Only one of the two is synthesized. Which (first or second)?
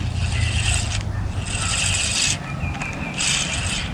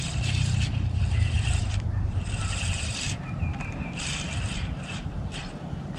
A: second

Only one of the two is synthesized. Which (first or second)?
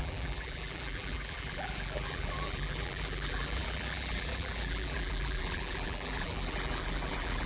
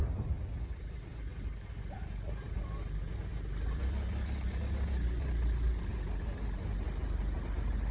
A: first